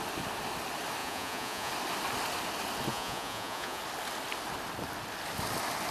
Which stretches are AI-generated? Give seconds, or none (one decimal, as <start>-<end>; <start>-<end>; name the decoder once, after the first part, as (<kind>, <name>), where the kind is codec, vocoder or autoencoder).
1.0-1.7 (vocoder, Vocos); 2.9-3.8